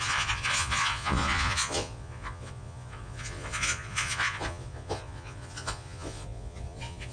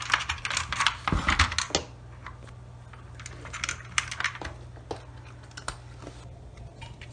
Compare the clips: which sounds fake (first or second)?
first